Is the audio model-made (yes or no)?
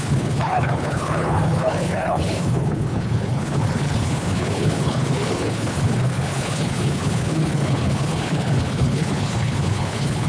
yes